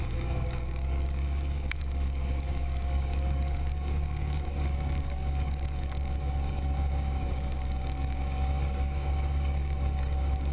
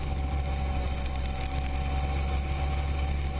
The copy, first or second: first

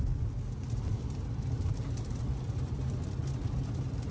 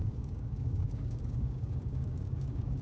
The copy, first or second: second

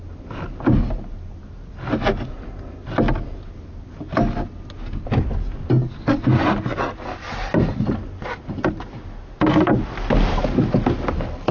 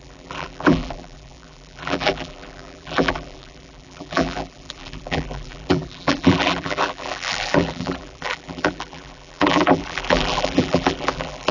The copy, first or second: second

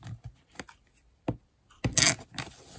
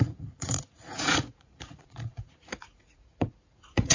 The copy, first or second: second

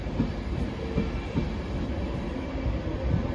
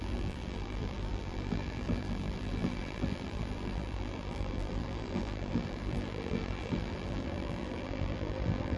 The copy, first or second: second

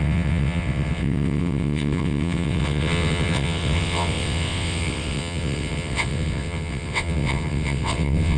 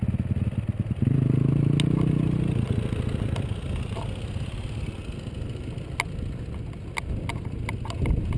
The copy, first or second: first